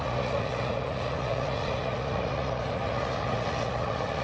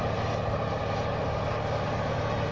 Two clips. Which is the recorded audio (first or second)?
second